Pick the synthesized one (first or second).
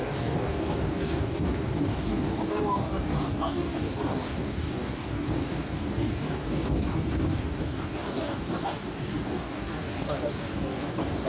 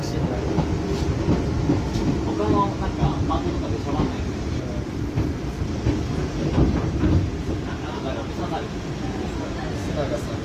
first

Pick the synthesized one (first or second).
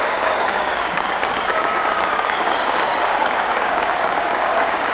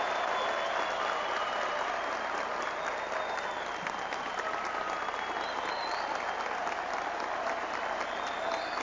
first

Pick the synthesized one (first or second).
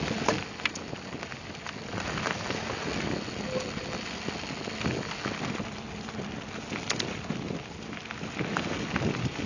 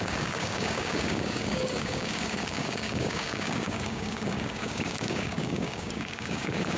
second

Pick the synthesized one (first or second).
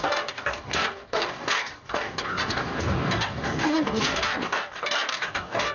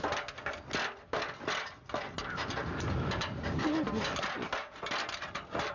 first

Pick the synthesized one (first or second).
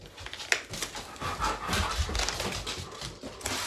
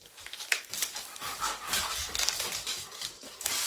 second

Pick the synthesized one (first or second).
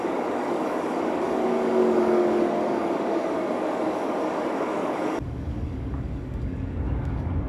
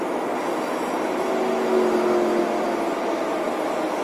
first